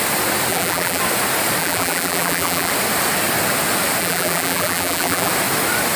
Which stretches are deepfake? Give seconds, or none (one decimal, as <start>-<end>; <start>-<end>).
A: 0.5-1.0; 1.6-2.7; 4.0-5.3

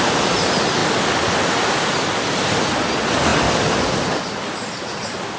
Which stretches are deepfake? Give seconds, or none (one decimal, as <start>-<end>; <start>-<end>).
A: none

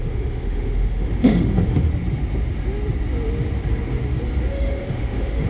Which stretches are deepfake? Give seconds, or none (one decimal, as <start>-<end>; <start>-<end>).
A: 0.0-1.9; 4.5-5.5

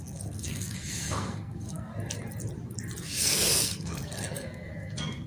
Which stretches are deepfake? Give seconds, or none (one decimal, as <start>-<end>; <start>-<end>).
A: 0.0-1.9; 3.0-5.3

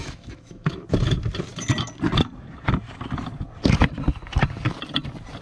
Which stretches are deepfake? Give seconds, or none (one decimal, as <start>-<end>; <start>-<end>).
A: 0.0-0.7